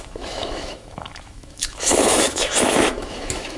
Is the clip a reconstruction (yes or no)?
yes